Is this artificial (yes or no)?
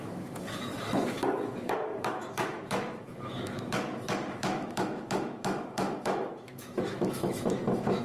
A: yes